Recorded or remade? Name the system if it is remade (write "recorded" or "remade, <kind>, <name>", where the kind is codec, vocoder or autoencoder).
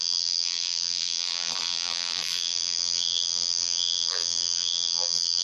remade, vocoder, BigVGAN v2